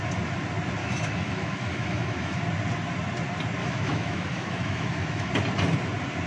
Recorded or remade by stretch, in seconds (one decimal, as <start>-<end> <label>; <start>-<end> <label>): 0.0-0.8 recorded; 0.8-2.4 remade; 2.4-3.6 recorded; 3.6-5.3 remade; 5.3-6.3 recorded